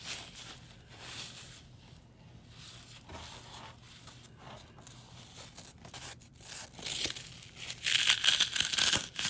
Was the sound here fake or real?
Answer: real